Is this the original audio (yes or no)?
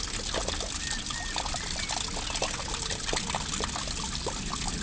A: yes